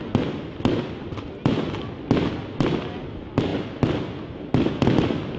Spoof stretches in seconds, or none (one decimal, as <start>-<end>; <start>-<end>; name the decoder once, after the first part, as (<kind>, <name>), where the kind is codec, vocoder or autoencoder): none